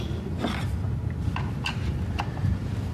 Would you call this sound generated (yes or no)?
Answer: no